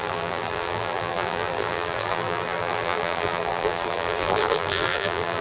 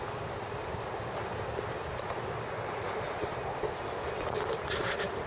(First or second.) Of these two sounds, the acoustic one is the second